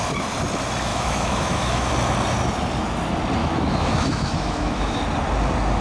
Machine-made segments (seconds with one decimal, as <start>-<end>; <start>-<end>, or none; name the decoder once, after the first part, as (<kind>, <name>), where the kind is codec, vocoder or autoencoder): 0.9-1.9 (autoencoder, DAC-VAE); 3.4-5.0